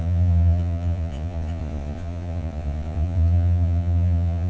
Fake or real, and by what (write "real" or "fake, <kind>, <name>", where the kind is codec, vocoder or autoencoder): fake, vocoder, Vocos